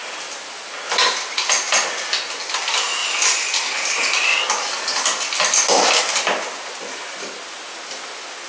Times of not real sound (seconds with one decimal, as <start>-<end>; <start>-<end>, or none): none